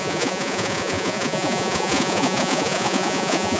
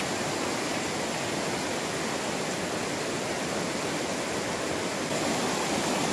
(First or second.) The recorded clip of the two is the second